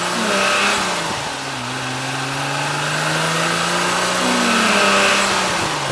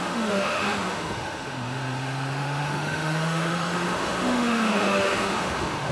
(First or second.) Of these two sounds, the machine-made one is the second